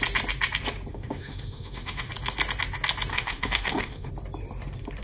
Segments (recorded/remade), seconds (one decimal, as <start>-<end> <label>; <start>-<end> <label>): 0.0-0.9 recorded; 0.9-2.1 remade; 2.1-3.1 recorded; 3.1-4.1 remade; 4.1-5.0 recorded